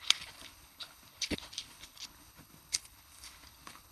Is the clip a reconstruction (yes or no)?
yes